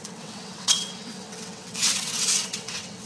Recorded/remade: remade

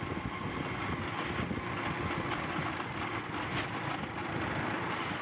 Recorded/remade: recorded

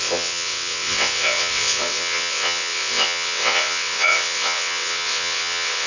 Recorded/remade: remade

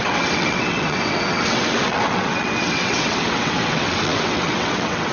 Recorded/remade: remade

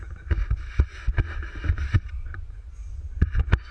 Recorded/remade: recorded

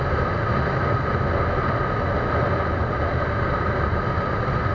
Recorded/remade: recorded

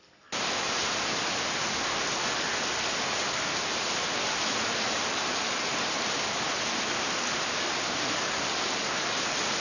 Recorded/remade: recorded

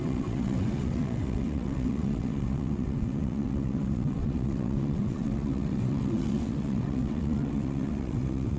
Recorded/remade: remade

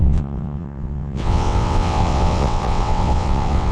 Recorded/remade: remade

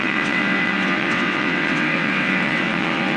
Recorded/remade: remade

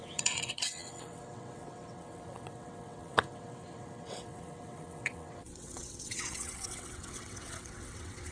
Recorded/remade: remade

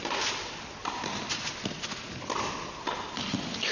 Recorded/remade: recorded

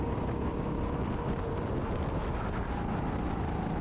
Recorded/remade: recorded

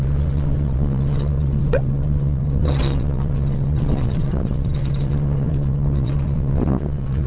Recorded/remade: remade